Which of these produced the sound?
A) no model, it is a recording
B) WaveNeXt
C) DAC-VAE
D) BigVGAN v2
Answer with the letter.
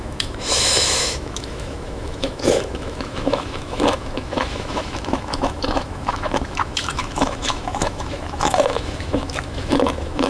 C